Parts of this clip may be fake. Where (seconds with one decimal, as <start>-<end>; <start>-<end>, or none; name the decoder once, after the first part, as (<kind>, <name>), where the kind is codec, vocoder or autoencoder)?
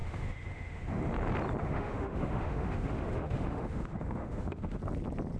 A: 0.0-1.0 (autoencoder, DAC-VAE); 1.6-4.8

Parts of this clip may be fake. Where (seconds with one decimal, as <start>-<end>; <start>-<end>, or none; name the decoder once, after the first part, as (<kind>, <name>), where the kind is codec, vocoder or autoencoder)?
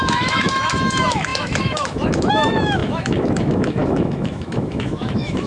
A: 0.0-5.5 (autoencoder, DAC-VAE)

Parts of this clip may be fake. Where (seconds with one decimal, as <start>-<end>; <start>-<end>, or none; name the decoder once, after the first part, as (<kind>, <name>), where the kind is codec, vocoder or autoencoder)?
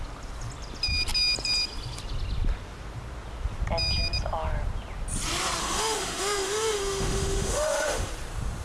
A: 5.6-8.1 (autoencoder, DAC-VAE)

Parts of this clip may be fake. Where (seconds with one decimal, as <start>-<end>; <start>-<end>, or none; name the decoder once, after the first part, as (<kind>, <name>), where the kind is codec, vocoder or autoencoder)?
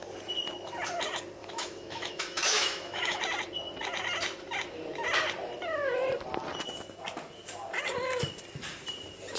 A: 1.4-3.2 (autoencoder, DAC-VAE)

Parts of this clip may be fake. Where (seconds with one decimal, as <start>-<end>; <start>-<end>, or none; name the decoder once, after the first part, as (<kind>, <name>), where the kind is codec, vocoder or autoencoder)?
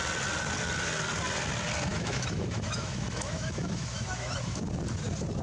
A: 1.9-4.6 (autoencoder, DAC-VAE)